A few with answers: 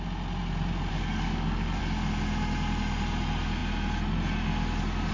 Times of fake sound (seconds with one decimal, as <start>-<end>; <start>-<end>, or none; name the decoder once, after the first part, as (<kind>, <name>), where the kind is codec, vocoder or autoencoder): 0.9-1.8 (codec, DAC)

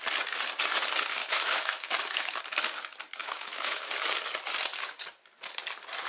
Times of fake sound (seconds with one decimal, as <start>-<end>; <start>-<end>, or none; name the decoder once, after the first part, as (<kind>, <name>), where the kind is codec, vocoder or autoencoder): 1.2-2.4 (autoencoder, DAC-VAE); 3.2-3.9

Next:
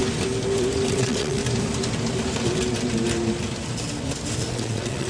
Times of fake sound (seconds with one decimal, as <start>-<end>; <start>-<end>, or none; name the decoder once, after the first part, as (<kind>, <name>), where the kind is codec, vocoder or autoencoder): 0.9-1.4 (vocoder, WaveNeXt); 4.5-5.1

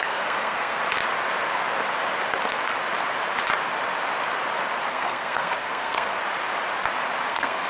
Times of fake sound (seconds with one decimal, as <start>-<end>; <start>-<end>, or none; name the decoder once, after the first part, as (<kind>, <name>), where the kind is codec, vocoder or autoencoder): 0.0-0.8 (codec, SNAC); 4.9-6.2; 7.3-7.7

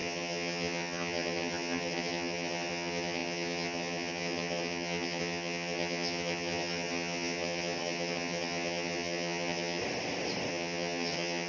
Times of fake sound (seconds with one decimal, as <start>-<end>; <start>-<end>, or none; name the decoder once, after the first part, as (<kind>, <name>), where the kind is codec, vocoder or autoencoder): 0.0-9.8 (vocoder, HiFi-GAN); 10.5-11.5

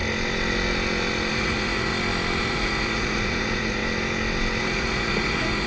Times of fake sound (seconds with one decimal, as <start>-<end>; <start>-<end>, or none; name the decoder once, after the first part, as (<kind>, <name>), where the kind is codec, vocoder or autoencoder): 1.3-1.9 (vocoder, Vocos); 2.4-3.8; 4.6-5.7